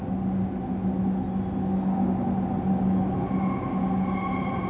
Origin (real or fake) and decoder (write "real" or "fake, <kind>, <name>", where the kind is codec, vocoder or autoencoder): real